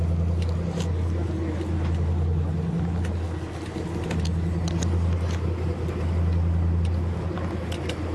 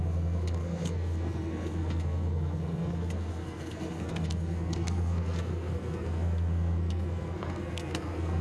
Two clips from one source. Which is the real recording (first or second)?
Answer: first